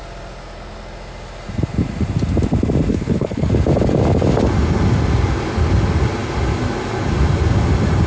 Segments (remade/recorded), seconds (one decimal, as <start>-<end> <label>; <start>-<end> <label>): 0.0-2.9 recorded; 2.9-3.5 remade; 3.5-8.1 recorded